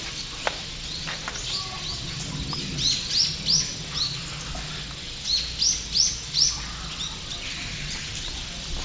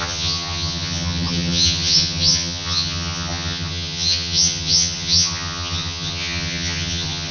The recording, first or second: first